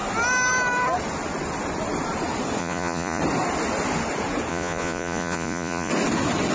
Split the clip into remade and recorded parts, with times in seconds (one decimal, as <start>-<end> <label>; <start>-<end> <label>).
0.0-2.6 recorded; 2.6-3.2 remade; 3.2-4.5 recorded; 4.5-5.9 remade; 5.9-6.5 recorded